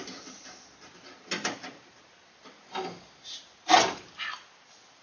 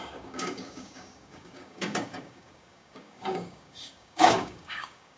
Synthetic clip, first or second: second